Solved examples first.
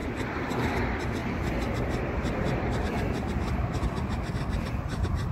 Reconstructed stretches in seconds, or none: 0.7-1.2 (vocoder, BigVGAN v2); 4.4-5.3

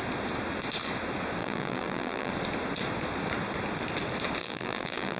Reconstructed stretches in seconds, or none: 1.4-2.3 (vocoder, BigVGAN v2); 4.4-5.2

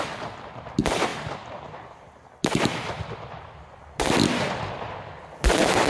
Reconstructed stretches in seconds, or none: 0.0-5.9 (vocoder, BigVGAN v2)

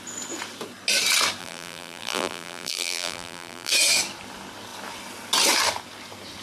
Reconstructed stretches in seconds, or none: 1.4-3.7 (vocoder, BigVGAN v2)

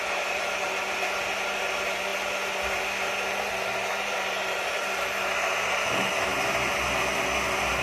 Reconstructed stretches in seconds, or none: none

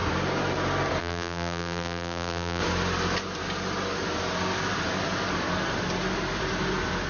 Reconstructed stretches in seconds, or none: 1.0-2.6 (vocoder, BigVGAN v2)

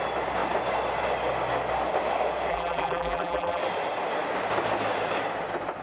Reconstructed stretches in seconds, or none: 2.5-3.6 (vocoder, BigVGAN v2)

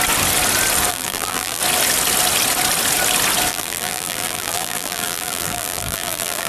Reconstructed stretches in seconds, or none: 0.9-1.6 (vocoder, BigVGAN v2); 3.5-6.5